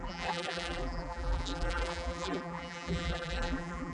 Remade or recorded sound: remade